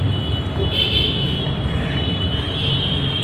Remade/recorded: recorded